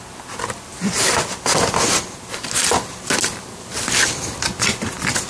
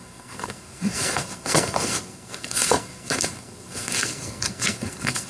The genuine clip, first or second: first